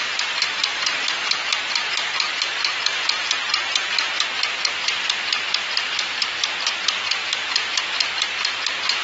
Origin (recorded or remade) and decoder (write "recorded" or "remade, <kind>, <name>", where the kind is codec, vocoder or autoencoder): recorded